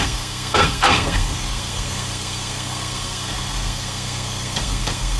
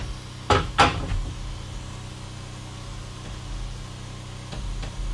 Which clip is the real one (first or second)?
second